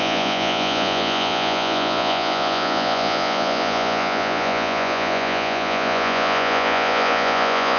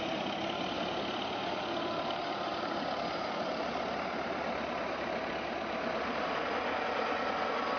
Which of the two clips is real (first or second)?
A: second